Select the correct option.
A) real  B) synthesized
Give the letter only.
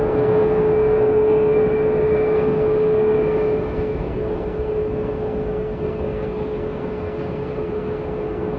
B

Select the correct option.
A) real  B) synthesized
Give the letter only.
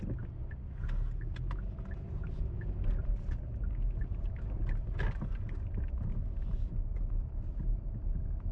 A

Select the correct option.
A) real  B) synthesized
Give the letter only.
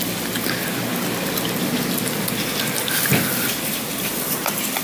A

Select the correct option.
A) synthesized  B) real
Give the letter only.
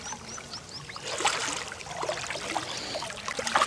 B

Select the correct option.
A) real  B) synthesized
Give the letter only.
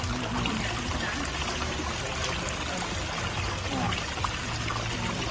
A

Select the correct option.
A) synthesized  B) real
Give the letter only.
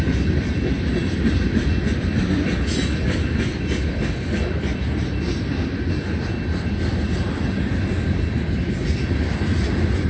B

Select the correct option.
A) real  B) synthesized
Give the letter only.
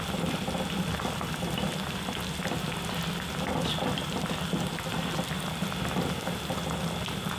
A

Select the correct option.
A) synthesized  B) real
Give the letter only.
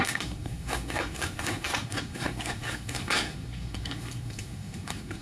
A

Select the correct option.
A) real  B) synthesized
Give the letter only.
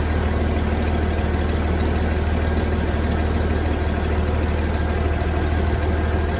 A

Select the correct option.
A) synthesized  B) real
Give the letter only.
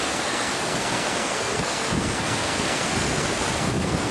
A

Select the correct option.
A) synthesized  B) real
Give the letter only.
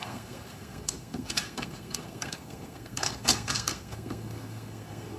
A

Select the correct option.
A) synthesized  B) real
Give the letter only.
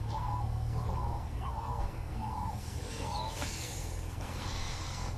A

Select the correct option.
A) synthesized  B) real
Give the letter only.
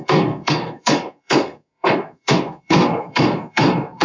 A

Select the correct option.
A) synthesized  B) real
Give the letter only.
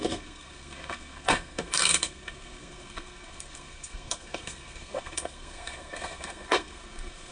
A